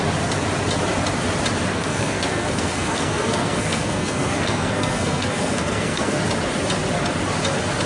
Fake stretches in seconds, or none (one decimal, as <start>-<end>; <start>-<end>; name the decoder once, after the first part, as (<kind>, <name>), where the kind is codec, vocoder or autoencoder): 1.7-6.2 (codec, SNAC)